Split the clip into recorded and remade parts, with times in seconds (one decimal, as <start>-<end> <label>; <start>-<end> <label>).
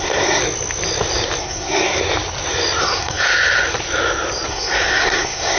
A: 0.0-0.4 remade; 0.4-1.4 recorded; 1.4-2.0 remade; 2.0-2.8 recorded; 2.8-3.3 remade; 3.3-4.5 recorded; 4.5-5.6 remade